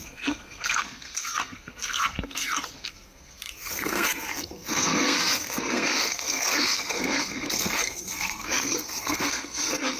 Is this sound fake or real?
fake